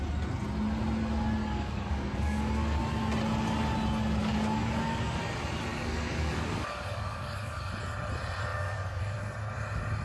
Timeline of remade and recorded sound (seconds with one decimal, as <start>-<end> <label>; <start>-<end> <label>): 0.0-1.4 recorded; 1.4-2.8 remade; 2.8-4.2 recorded; 4.2-5.2 remade; 5.2-5.7 recorded; 5.7-7.7 remade; 7.7-8.5 recorded; 8.5-9.0 remade; 9.0-10.0 recorded